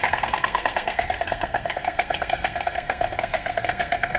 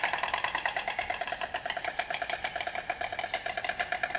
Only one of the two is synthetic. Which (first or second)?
first